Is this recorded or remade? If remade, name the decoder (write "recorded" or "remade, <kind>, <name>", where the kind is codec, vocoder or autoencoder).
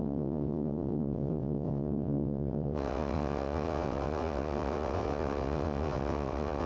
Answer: remade, vocoder, WaveNeXt